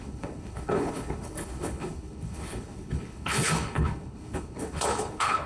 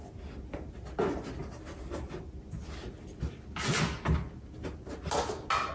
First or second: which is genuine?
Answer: second